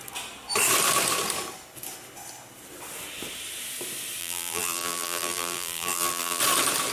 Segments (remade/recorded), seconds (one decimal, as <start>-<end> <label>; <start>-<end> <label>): 0.0-4.2 recorded; 4.2-6.4 remade; 6.4-6.9 recorded